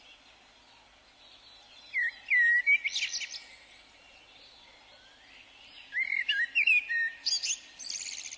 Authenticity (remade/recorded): recorded